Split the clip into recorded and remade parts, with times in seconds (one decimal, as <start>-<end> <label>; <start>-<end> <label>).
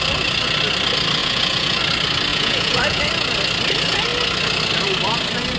0.0-1.2 recorded; 1.2-1.8 remade; 1.8-2.3 recorded; 2.3-3.0 remade; 3.0-5.6 recorded